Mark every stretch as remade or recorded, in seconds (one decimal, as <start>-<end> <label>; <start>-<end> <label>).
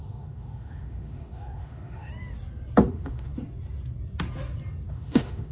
0.0-2.1 remade; 2.1-2.9 recorded; 2.9-3.3 remade; 3.3-4.9 recorded; 4.9-5.5 remade